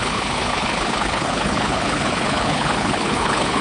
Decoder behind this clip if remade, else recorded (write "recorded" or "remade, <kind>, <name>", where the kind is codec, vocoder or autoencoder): remade, codec, HILCodec